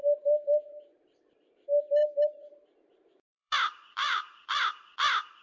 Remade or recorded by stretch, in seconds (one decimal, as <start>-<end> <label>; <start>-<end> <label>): 0.0-2.0 recorded; 2.0-3.5 remade; 3.5-3.9 recorded; 3.9-4.6 remade; 4.6-5.4 recorded